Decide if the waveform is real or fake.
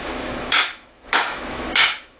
fake